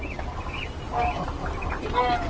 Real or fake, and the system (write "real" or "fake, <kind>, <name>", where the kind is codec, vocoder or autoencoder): real